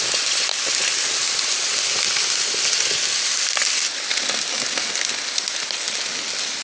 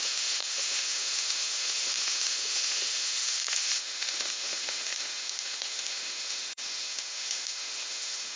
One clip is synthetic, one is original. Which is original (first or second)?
first